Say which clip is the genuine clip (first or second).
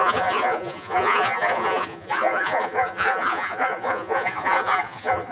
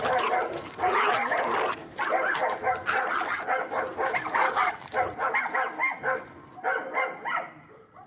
second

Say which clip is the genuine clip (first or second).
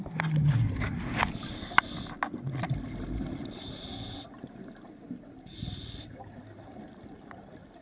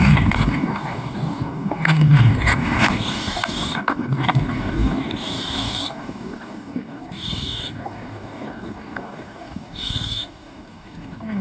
first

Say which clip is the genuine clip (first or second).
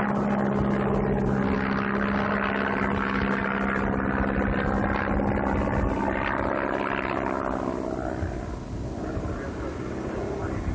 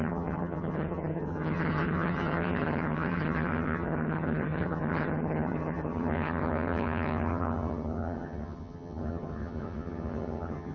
first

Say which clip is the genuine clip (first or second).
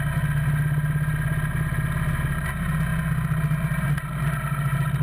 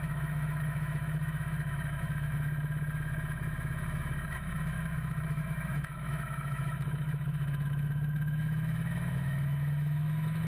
first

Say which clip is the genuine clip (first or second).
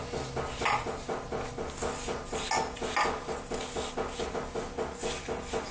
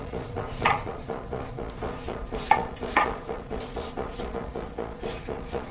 first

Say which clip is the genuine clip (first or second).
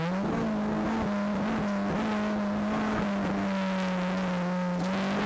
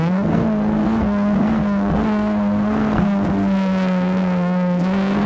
first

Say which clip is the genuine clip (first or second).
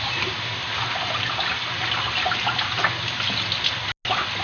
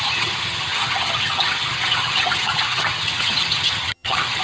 first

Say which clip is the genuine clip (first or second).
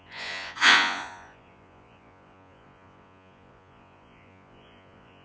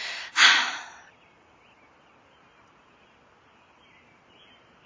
second